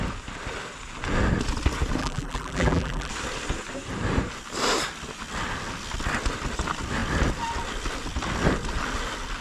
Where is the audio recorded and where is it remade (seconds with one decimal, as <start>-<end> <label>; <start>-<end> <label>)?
0.0-2.0 recorded; 2.0-3.1 remade; 3.1-9.4 recorded